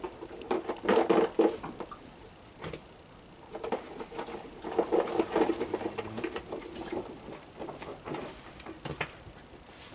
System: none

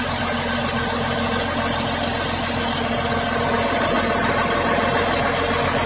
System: none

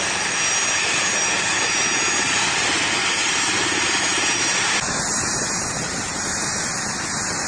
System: none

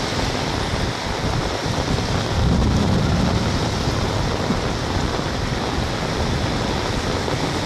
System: none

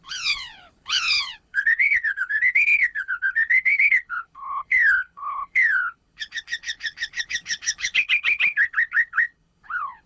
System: codec, HILCodec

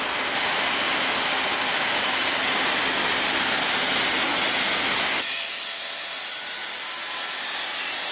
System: none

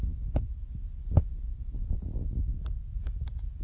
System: none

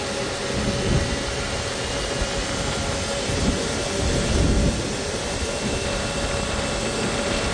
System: none